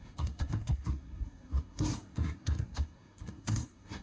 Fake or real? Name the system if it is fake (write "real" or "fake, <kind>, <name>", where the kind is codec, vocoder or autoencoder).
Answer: fake, codec, SNAC